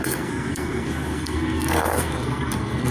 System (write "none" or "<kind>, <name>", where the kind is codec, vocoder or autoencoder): codec, SNAC